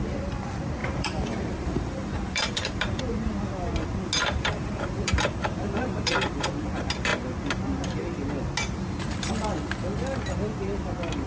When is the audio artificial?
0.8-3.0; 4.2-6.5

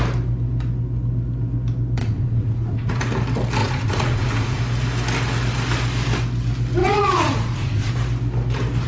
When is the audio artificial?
2.0-3.0; 3.6-4.6; 6.8-7.9